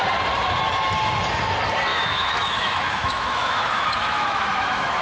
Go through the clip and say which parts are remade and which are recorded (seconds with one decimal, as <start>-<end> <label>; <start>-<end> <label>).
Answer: 0.0-1.9 recorded; 1.9-5.0 remade